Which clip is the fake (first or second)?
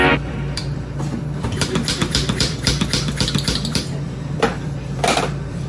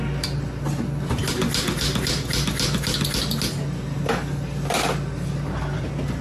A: first